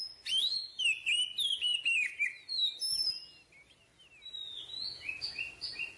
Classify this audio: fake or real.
real